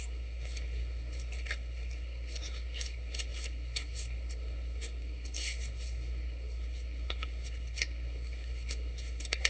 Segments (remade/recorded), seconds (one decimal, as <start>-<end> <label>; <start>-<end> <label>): 0.0-9.5 remade